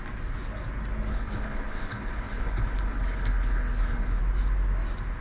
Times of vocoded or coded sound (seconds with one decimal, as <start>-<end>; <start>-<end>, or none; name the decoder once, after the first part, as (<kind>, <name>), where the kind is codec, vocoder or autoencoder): 1.1-4.2 (codec, HILCodec)